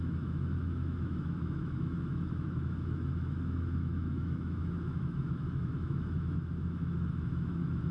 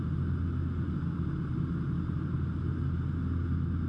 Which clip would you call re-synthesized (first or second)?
first